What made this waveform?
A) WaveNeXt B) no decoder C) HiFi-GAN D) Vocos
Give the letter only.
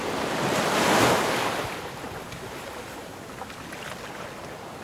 B